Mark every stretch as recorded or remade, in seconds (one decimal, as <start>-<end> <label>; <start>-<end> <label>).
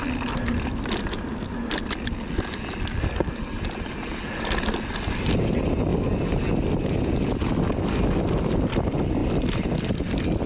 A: 0.0-10.5 recorded